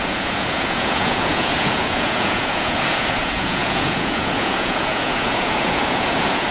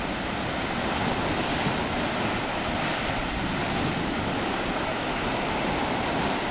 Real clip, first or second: second